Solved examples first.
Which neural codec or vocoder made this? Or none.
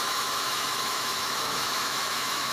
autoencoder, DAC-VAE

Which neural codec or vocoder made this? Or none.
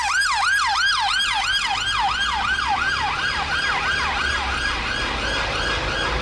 none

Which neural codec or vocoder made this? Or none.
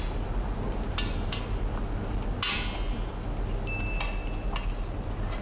none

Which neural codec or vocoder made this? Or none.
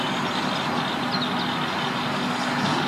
none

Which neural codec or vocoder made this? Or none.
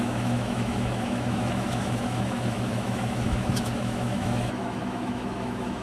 autoencoder, DAC-VAE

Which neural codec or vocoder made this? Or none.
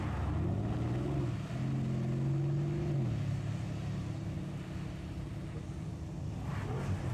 none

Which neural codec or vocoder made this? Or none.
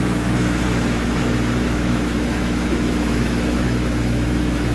autoencoder, DAC-VAE